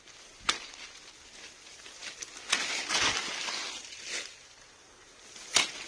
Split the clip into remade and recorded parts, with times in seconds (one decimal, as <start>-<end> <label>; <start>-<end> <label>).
0.0-5.9 recorded